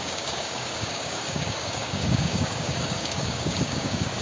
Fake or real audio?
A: fake